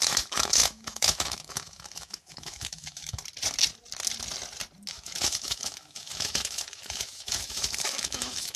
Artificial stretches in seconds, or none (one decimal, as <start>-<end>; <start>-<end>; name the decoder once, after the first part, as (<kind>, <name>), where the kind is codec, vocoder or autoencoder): 0.0-3.2 (autoencoder, DAC-VAE); 4.9-8.6